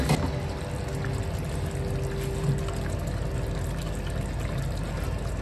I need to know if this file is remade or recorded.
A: recorded